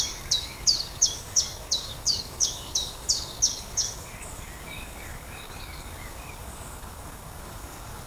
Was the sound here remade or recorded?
remade